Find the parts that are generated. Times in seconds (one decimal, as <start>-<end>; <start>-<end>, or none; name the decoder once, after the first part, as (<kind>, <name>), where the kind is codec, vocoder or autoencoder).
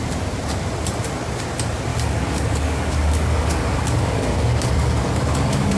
1.9-5.8 (codec, DAC)